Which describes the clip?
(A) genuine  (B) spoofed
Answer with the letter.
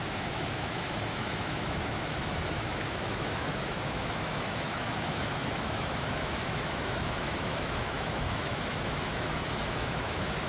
B